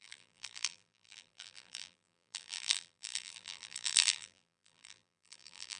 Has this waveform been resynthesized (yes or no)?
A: yes